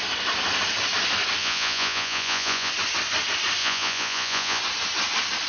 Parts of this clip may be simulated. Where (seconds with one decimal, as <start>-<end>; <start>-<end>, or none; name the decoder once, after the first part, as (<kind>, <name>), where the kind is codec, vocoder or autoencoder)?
1.4-2.7 (vocoder, Vocos); 3.6-4.6